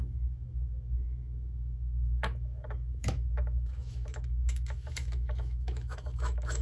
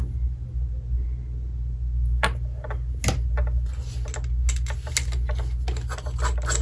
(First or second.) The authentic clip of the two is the second